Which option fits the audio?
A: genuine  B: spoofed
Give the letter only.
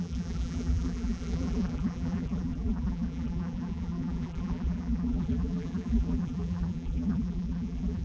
B